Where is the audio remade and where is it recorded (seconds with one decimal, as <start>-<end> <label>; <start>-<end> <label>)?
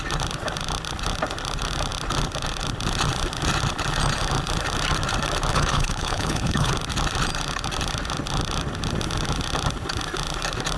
0.0-5.5 recorded; 5.5-6.7 remade; 6.7-10.8 recorded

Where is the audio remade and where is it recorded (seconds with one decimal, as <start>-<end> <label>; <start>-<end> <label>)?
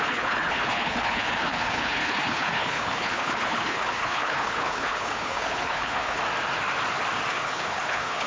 0.0-6.2 remade; 6.2-7.3 recorded; 7.3-8.3 remade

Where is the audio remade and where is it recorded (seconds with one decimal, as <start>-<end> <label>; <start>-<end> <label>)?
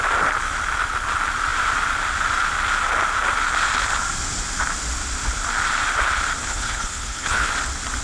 0.0-6.4 recorded; 6.4-7.5 remade; 7.5-8.0 recorded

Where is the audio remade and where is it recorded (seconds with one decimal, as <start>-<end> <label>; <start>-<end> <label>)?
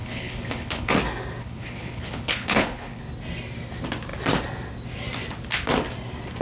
0.0-0.9 remade; 0.9-1.4 recorded; 1.4-3.0 remade; 3.0-6.4 recorded